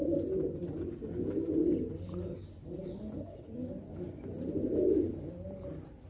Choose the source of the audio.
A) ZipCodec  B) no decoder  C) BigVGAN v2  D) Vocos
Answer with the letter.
B